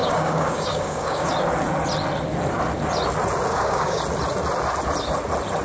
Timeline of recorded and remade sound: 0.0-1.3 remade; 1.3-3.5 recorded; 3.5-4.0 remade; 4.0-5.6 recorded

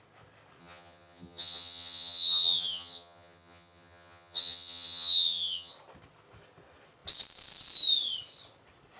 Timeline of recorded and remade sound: 0.0-0.6 recorded; 0.6-5.7 remade; 5.7-9.0 recorded